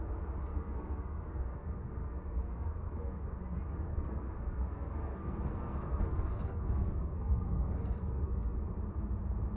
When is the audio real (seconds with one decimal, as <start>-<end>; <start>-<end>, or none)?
0.0-0.5; 3.4-3.9; 8.8-9.6